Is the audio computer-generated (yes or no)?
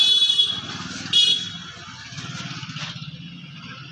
no